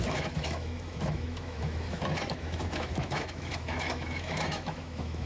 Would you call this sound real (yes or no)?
no